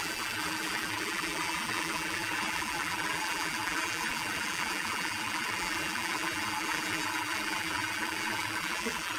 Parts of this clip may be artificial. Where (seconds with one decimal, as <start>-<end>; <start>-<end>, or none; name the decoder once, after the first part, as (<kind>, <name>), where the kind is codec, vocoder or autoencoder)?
0.0-9.2 (vocoder, BigVGAN v2)